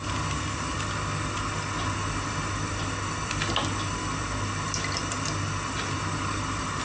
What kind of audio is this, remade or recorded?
recorded